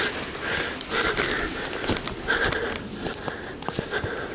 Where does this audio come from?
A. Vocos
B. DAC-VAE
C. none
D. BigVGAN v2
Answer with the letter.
C